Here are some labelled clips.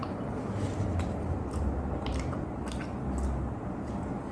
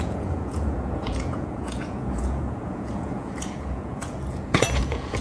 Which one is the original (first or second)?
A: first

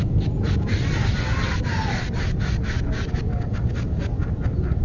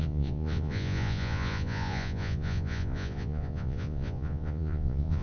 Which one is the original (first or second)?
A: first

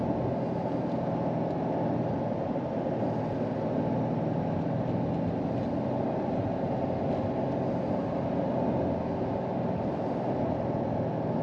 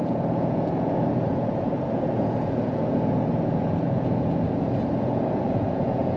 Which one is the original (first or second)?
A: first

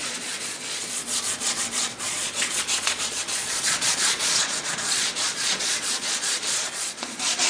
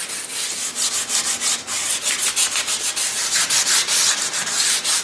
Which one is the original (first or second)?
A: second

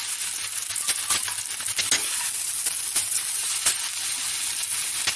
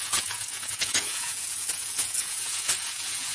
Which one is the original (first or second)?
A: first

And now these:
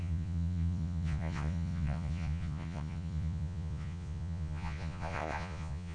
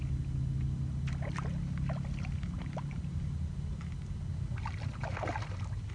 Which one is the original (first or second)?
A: second